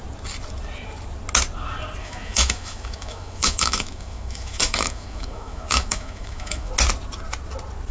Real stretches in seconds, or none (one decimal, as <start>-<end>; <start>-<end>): 0.0-2.0; 6.7-7.9